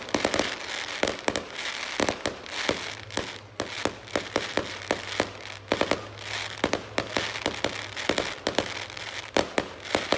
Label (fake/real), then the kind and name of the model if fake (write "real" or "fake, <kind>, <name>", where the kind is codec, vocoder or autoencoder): real